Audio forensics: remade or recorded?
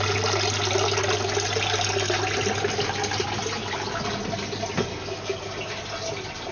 recorded